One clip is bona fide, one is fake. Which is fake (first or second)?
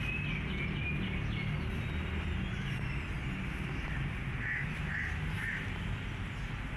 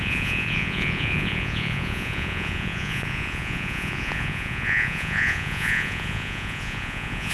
second